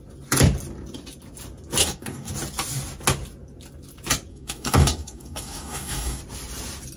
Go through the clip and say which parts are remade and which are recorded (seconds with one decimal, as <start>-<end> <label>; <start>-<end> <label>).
0.0-1.8 recorded; 1.8-2.3 remade; 2.3-4.3 recorded; 4.3-6.2 remade; 6.2-7.0 recorded